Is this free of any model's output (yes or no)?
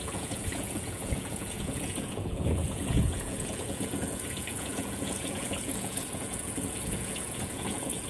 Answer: no